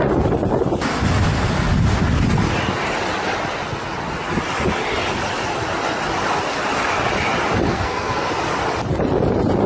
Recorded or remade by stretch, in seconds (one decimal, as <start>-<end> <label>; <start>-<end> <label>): 0.0-7.7 recorded; 7.7-8.3 remade; 8.3-9.7 recorded